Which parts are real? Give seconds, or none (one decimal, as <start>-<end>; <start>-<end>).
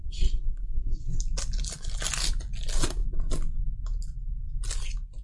1.2-5.2